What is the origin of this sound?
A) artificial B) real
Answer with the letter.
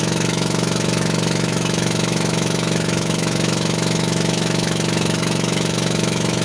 A